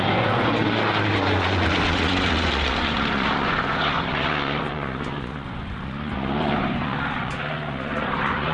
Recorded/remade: remade